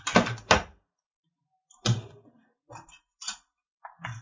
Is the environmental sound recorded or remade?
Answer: recorded